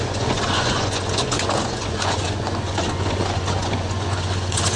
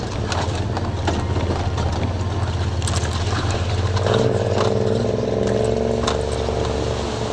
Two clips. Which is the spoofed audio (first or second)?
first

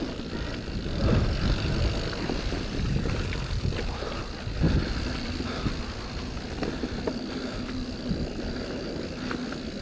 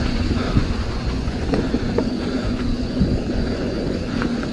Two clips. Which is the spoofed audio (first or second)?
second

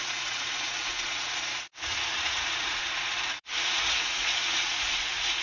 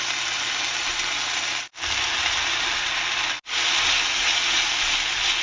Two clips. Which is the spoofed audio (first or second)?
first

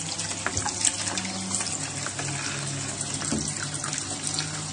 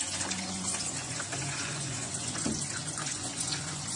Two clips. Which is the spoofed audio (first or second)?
second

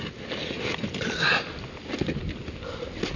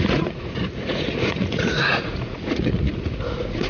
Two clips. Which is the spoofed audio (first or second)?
second